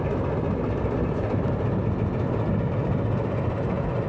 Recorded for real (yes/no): yes